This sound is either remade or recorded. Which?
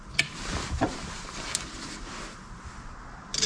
recorded